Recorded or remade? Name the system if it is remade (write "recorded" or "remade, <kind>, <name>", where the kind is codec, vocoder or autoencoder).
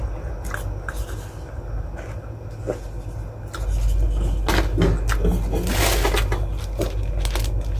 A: recorded